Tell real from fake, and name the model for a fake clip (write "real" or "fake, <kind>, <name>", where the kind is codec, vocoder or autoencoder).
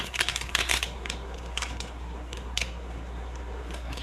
fake, codec, SNAC